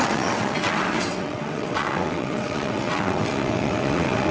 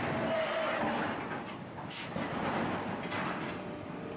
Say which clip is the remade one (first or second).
first